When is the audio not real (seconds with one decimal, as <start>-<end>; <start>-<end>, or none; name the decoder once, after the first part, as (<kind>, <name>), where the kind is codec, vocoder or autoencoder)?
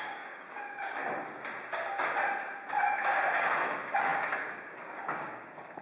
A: 0.0-1.0 (codec, DAC); 3.3-5.8